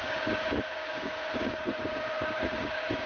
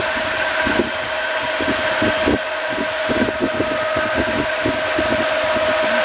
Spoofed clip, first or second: first